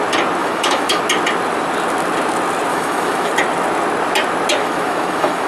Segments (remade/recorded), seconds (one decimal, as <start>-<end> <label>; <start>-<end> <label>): 0.0-0.4 recorded; 0.4-1.0 remade; 1.0-2.7 recorded; 2.7-3.3 remade; 3.3-4.6 recorded; 4.6-5.5 remade